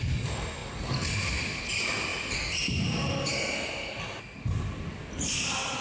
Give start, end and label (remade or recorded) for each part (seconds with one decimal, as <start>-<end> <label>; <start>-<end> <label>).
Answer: 0.0-5.8 recorded